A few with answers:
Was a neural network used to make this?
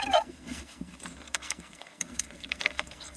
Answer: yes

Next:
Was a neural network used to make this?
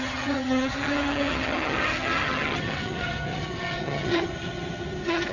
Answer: yes